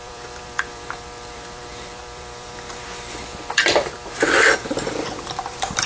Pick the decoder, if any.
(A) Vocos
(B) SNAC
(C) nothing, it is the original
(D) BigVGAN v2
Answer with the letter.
D